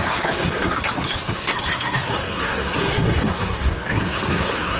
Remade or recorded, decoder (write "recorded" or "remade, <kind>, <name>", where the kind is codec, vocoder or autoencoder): remade, codec, SNAC